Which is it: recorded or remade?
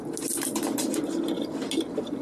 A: recorded